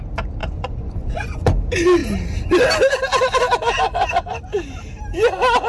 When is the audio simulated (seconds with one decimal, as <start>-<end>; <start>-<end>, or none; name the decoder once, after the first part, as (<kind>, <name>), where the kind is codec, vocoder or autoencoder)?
0.4-1.5 (vocoder, Vocos)